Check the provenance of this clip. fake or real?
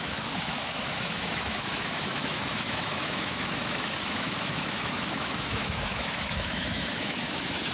fake